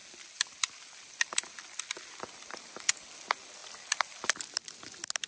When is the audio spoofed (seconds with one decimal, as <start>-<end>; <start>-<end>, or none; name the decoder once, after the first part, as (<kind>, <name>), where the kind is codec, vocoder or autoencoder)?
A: none